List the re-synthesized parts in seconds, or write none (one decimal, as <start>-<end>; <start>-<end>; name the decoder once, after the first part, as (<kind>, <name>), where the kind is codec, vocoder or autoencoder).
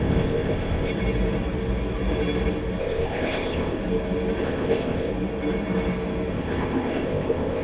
0.0-0.9 (codec, ZipCodec); 2.8-3.8; 4.4-5.1; 6.3-7.6